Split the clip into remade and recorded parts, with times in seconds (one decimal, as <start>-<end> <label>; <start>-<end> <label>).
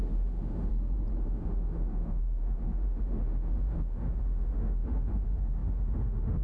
0.0-0.7 remade; 0.7-1.2 recorded; 1.2-6.4 remade